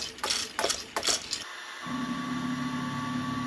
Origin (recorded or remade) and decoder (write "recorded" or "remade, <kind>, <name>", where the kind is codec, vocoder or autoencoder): recorded